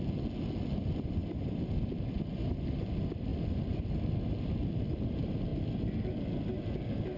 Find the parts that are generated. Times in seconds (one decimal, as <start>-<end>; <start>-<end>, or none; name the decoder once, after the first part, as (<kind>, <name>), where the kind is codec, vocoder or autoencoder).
1.2-2.1 (vocoder, BigVGAN v2); 3.3-4.1